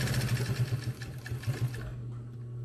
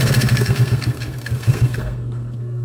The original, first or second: first